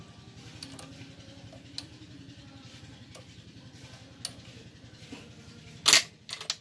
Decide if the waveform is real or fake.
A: real